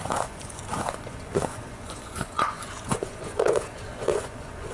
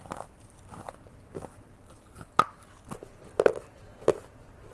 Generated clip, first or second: first